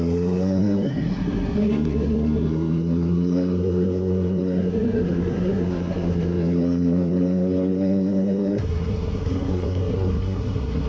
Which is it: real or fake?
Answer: fake